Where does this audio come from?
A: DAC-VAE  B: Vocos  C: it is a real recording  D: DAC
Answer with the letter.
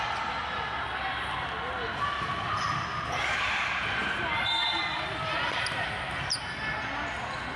C